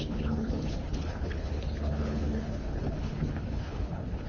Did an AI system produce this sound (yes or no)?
yes